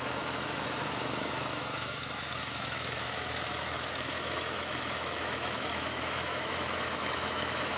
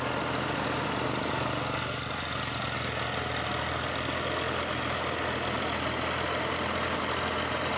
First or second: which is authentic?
second